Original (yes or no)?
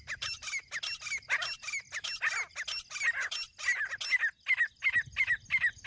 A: yes